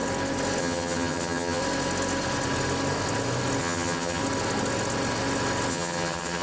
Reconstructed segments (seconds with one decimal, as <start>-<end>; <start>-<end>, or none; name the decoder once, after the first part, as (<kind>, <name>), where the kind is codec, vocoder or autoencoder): 0.6-1.6 (vocoder, HiFi-GAN); 3.6-4.2; 5.7-6.4